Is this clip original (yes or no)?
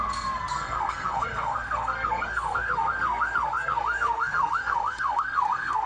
no